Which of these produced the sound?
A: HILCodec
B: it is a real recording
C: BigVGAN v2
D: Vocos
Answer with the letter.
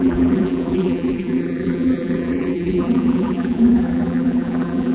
C